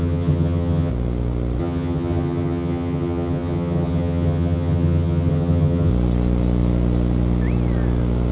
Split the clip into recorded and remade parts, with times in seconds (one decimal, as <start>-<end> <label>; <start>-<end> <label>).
0.0-0.9 remade; 0.9-1.6 recorded; 1.6-5.9 remade; 5.9-8.3 recorded